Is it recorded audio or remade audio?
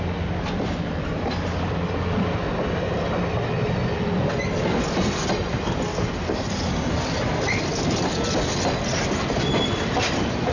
recorded